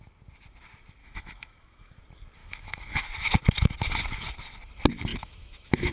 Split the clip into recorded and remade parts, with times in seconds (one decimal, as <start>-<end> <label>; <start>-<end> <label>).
0.0-1.0 recorded; 1.0-2.0 remade; 2.0-2.4 recorded; 2.4-3.0 remade; 3.0-5.1 recorded; 5.1-5.9 remade